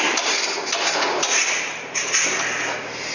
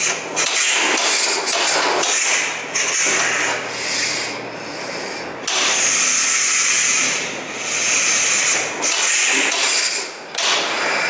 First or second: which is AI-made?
first